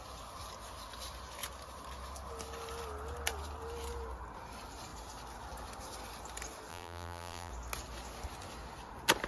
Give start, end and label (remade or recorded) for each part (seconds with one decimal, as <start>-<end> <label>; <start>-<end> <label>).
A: 0.0-6.7 recorded; 6.7-7.5 remade; 7.5-9.3 recorded